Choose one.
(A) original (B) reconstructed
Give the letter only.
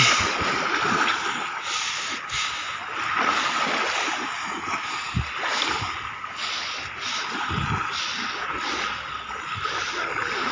A